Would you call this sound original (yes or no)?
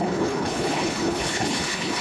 no